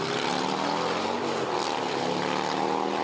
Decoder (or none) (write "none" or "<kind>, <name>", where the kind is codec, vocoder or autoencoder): none